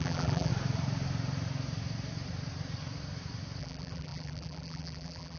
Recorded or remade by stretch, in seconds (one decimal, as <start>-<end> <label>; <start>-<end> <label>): 0.0-0.5 remade; 0.5-3.6 recorded; 3.6-5.4 remade